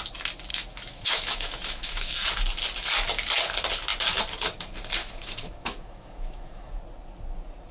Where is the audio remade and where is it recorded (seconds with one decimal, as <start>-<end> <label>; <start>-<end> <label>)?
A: 0.0-0.5 recorded; 0.5-2.1 remade; 2.1-5.0 recorded; 5.0-6.8 remade; 6.8-7.7 recorded